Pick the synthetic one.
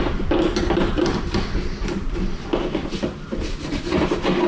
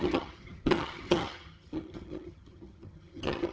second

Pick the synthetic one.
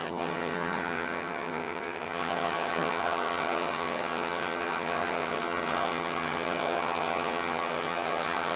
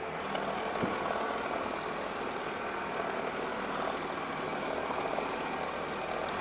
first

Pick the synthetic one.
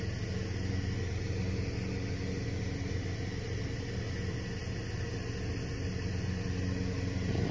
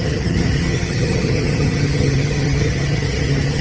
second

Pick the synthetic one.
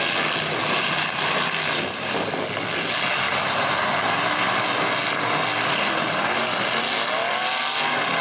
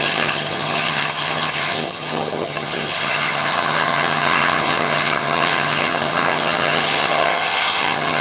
second